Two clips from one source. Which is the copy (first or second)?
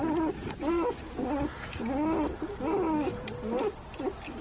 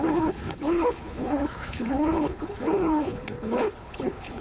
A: second